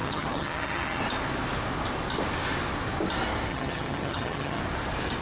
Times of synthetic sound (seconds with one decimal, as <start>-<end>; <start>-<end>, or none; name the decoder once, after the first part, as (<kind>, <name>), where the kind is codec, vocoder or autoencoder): 0.0-1.0 (vocoder, HiFi-GAN); 3.5-4.6